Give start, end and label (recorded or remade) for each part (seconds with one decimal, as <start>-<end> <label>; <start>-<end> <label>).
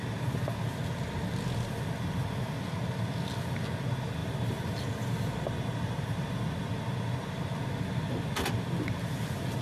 0.0-4.2 recorded; 4.2-6.4 remade; 6.4-9.6 recorded